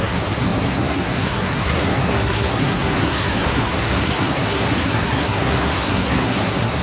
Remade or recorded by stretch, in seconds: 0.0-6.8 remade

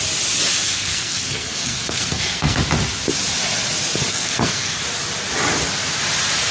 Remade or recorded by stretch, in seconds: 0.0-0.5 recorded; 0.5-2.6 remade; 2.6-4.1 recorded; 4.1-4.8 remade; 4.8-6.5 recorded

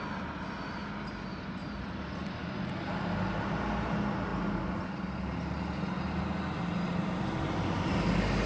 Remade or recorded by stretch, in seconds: 0.0-8.5 recorded